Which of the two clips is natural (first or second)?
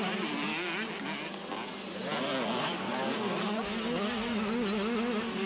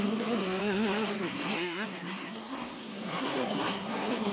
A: first